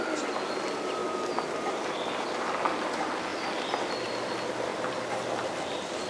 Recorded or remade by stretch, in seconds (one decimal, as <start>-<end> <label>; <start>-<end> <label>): 0.0-6.1 recorded